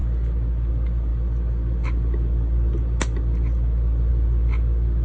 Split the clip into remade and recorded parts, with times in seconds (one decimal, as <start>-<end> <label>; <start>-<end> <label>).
0.0-5.0 recorded